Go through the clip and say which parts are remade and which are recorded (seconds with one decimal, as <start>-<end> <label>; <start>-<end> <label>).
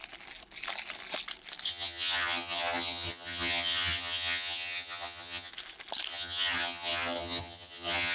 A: 0.0-1.7 recorded; 1.7-5.5 remade; 5.5-6.1 recorded; 6.1-8.1 remade